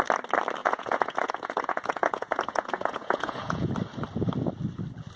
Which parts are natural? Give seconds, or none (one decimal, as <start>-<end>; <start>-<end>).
0.0-0.6; 3.7-5.2

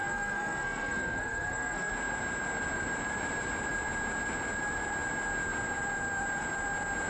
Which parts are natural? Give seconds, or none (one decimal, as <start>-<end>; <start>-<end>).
1.9-7.1

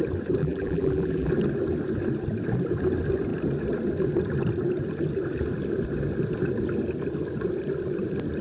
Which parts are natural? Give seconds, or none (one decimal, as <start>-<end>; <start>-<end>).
0.0-0.4; 1.3-8.4

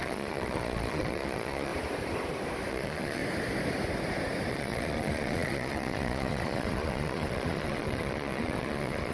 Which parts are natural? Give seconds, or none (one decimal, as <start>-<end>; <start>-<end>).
1.7-2.7; 3.2-4.5

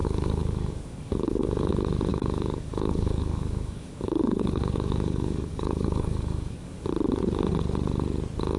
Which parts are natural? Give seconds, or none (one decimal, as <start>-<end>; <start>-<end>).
1.7-2.1; 6.9-8.6

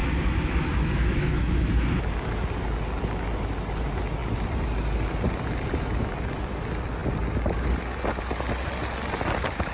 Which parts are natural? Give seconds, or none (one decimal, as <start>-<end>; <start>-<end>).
1.7-9.7

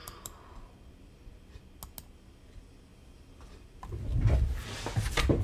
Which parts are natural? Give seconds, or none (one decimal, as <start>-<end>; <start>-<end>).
1.8-2.9; 4.2-5.4